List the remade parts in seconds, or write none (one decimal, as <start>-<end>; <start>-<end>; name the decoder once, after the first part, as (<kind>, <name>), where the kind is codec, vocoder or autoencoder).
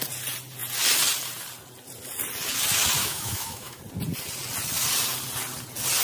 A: 3.0-3.8 (autoencoder, DAC-VAE)